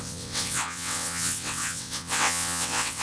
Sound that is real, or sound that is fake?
fake